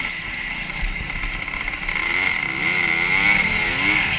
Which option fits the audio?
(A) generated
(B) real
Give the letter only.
B